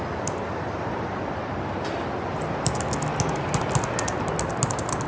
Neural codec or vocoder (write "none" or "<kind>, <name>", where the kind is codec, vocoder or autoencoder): none